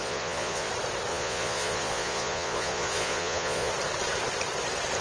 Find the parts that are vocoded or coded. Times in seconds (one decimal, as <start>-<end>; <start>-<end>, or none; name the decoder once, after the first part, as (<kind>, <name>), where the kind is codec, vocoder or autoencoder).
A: 0.0-0.7 (vocoder, Vocos); 1.1-3.7